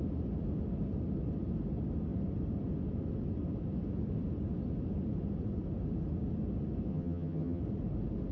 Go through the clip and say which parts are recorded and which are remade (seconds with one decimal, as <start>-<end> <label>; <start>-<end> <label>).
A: 0.0-6.9 recorded; 6.9-7.6 remade; 7.6-8.3 recorded